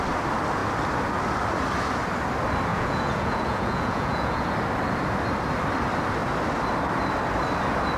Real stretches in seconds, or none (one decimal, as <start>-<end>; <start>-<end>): 0.0-2.7; 4.5-8.0